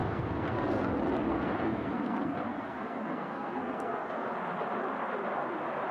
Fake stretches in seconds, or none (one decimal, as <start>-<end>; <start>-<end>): 0.0-0.9; 1.3-4.3